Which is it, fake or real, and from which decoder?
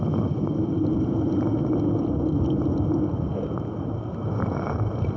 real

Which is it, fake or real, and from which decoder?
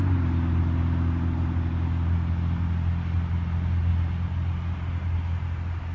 real